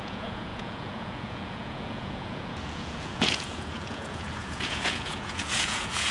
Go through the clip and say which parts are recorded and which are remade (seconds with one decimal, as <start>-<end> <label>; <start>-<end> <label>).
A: 0.0-6.1 remade